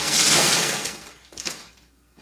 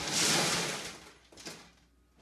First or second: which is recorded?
second